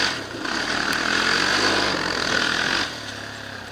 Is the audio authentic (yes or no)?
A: yes